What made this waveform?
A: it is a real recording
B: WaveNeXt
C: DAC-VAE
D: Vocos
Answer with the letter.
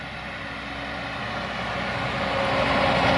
A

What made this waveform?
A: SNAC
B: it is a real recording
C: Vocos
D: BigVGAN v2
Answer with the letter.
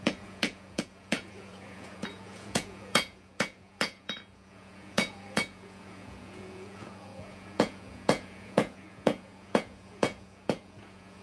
C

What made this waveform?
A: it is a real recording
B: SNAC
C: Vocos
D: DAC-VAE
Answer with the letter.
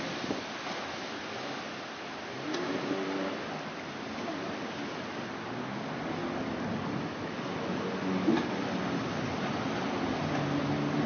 A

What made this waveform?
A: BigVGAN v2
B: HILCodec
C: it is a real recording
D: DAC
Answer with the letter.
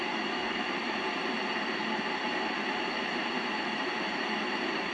A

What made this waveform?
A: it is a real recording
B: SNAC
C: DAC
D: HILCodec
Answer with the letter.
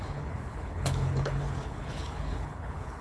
D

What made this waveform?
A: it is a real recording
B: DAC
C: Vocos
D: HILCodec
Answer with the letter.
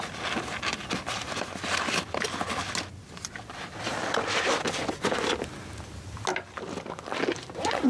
A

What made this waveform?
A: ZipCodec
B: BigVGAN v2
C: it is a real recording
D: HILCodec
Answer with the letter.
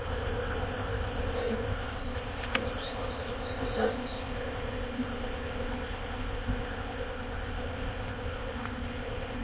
A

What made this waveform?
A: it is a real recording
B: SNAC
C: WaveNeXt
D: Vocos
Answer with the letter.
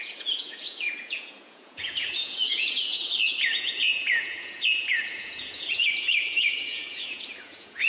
D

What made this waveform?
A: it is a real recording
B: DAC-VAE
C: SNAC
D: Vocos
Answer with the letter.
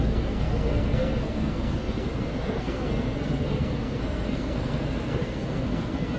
C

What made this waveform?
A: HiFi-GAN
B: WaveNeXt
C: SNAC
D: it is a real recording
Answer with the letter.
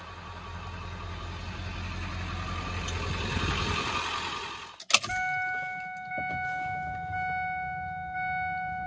D